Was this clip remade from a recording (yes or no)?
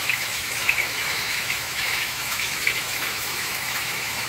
yes